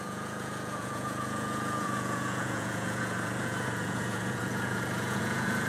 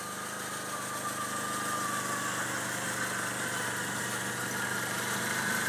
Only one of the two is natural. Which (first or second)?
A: second